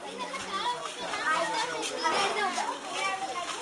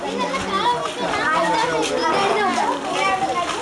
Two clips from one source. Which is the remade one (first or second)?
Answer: first